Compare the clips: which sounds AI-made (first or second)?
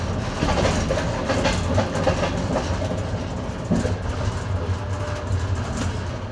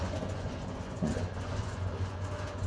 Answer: second